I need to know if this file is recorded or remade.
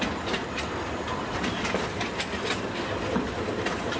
recorded